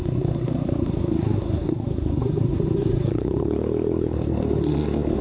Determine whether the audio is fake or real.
fake